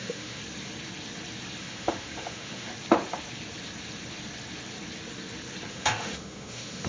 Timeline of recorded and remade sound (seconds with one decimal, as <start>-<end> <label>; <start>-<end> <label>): 0.0-0.4 remade; 0.4-1.6 recorded; 1.6-2.7 remade; 2.7-5.7 recorded; 5.7-6.9 remade